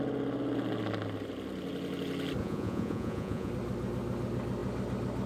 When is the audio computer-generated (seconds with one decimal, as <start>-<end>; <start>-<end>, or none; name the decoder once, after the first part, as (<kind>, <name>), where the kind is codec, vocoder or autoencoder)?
2.4-3.5 (vocoder, Vocos)